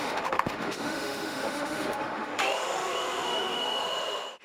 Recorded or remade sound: remade